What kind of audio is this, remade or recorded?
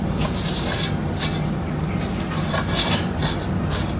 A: recorded